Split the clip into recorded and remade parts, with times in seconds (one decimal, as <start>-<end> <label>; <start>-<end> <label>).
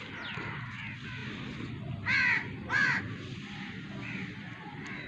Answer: 0.0-5.1 recorded